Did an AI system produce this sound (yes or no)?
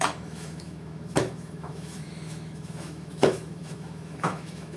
yes